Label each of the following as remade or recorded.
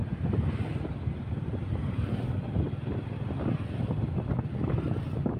recorded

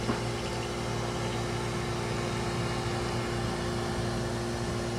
recorded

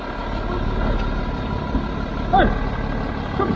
recorded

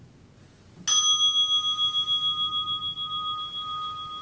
recorded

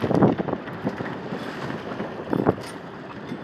recorded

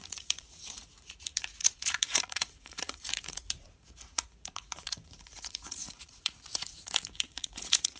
remade